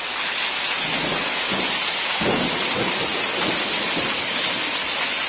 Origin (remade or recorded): recorded